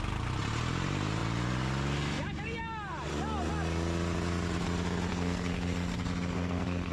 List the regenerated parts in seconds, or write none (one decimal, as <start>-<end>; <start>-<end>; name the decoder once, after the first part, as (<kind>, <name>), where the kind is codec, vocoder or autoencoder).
5.1-6.9 (codec, SNAC)